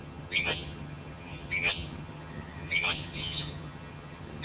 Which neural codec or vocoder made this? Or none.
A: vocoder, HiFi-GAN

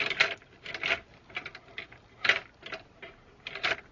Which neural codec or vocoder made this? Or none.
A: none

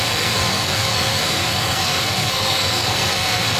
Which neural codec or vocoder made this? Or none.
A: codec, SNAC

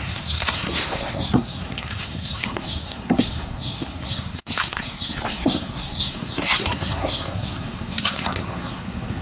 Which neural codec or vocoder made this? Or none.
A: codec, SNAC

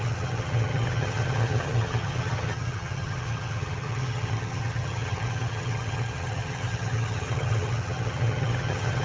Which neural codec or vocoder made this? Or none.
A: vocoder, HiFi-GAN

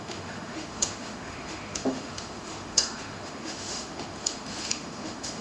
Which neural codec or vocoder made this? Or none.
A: autoencoder, DAC-VAE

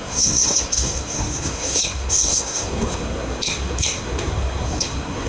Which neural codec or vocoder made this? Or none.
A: codec, SNAC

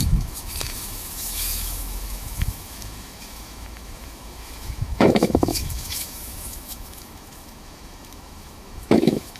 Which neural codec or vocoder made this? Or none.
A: autoencoder, DAC-VAE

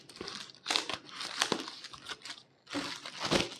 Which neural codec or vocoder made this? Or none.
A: none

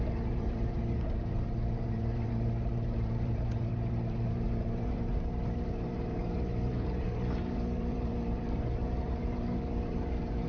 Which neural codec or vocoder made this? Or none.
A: vocoder, BigVGAN v2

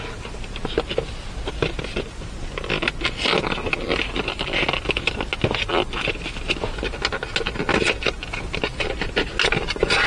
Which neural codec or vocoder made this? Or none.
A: none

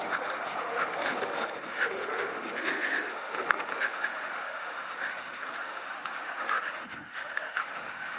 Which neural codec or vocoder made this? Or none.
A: autoencoder, DAC-VAE